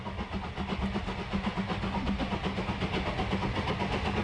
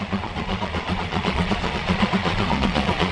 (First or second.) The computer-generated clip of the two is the second